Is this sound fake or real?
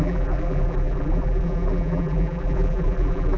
fake